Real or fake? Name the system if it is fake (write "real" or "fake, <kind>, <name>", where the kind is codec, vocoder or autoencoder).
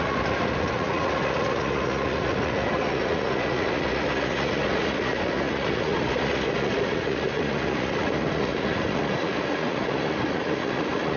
fake, vocoder, Vocos